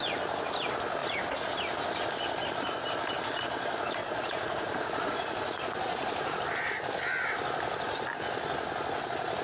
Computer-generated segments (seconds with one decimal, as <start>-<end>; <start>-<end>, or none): 4.0-6.4